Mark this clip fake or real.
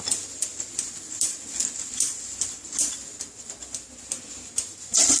real